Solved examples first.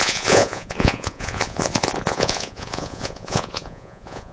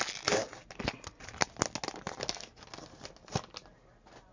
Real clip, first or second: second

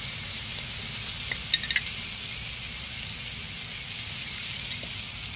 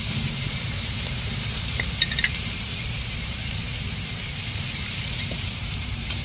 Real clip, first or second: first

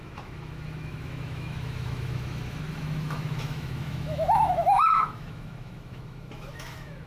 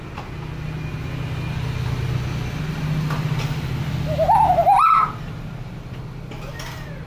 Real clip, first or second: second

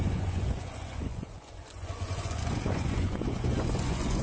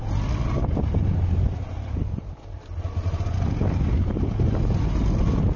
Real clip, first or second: second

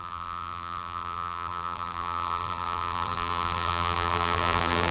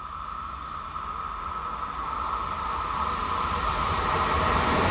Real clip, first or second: second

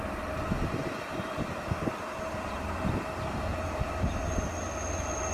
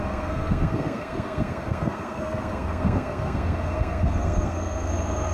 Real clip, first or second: first